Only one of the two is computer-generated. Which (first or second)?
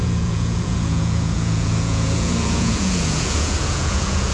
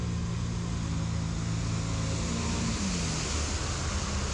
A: first